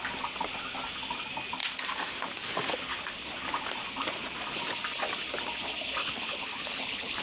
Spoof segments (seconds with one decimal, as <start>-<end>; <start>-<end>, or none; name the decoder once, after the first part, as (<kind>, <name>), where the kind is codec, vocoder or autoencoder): 6.0-7.2 (codec, HILCodec)